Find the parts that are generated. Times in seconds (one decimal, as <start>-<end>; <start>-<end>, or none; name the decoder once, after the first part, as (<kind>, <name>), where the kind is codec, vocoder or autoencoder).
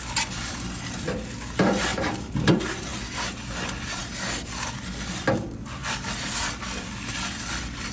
1.9-2.5 (vocoder, BigVGAN v2)